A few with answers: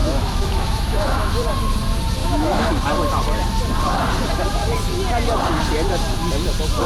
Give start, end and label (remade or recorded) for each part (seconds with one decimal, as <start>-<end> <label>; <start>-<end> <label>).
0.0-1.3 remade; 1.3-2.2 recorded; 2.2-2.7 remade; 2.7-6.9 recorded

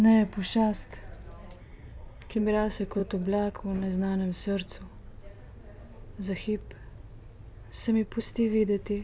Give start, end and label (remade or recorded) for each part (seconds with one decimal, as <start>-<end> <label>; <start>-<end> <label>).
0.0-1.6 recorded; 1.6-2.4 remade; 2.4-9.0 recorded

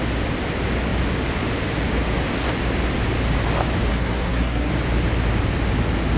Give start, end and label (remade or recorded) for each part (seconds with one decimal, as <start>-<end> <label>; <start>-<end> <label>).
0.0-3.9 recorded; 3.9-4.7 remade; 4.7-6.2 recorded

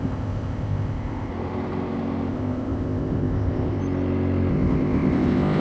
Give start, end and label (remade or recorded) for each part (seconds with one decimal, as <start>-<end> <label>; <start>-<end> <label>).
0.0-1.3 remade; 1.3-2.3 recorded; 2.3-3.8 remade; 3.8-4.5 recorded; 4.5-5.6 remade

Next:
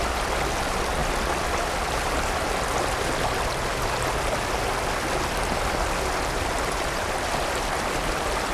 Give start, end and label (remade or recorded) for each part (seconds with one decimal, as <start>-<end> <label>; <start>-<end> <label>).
0.0-8.5 recorded